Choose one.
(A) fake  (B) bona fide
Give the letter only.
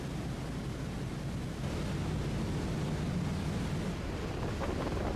B